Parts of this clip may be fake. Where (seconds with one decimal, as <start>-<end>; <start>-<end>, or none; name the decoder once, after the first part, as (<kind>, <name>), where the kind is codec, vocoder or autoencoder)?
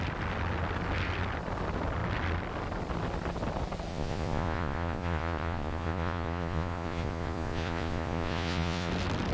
3.9-8.9 (vocoder, Vocos)